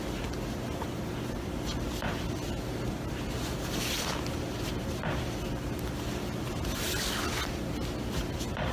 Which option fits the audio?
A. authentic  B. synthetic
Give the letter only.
A